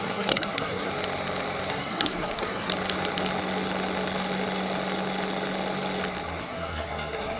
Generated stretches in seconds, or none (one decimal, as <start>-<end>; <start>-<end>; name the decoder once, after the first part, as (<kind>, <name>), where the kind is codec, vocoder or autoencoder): 0.0-0.9 (codec, SNAC); 1.7-2.7; 6.4-7.4